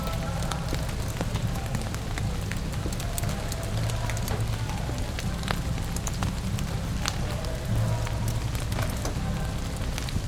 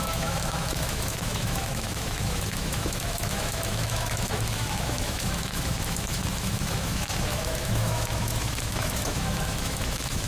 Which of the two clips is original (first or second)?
first